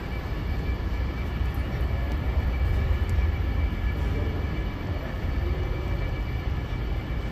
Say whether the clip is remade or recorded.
remade